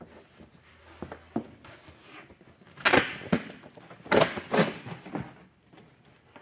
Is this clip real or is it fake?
real